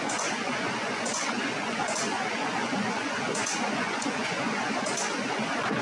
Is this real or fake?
fake